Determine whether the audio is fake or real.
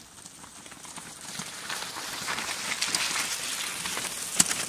real